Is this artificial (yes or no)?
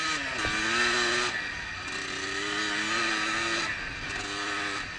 no